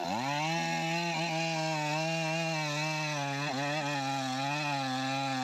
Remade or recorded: recorded